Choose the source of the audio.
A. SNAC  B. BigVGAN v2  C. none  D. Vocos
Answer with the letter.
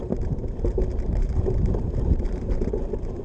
B